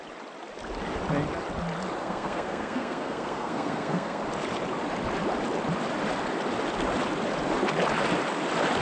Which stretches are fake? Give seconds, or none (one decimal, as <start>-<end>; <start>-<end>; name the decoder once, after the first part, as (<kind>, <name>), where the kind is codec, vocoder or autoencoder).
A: 2.0-4.2 (codec, SNAC)